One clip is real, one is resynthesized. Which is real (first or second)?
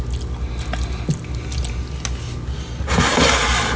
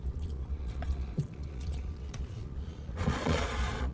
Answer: first